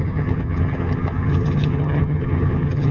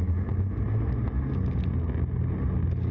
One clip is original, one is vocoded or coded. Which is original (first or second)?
second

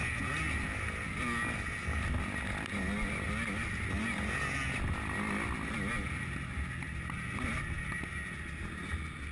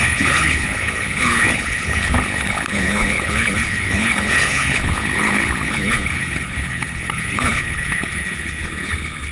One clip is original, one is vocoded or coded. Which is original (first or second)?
first